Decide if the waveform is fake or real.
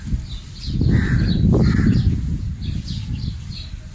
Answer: real